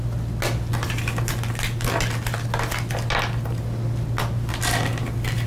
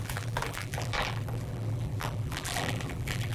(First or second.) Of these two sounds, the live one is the first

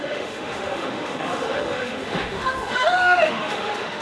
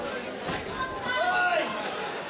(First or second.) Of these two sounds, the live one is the second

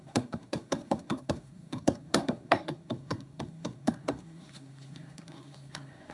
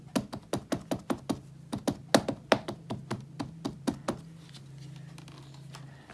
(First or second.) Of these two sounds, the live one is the second